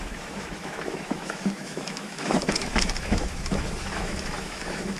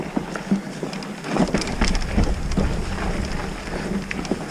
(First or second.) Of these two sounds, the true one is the second